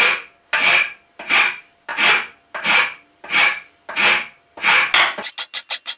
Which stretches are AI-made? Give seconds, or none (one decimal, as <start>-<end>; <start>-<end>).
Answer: none